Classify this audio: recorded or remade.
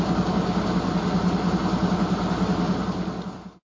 recorded